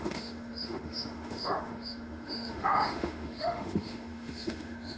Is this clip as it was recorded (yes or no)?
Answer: no